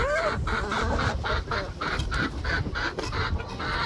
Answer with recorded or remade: recorded